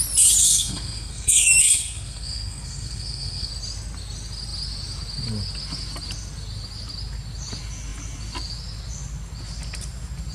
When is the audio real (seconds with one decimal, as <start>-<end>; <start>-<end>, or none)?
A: 0.0-0.4; 3.5-10.3